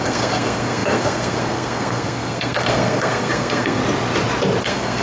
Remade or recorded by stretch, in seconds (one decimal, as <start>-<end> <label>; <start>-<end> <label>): 0.0-3.8 remade; 3.8-4.6 recorded; 4.6-5.0 remade